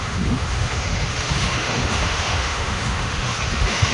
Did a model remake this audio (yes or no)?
yes